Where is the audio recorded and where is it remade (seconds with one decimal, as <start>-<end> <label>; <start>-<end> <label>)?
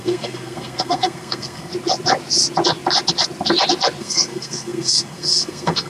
0.0-1.7 remade; 1.7-4.0 recorded; 4.0-5.9 remade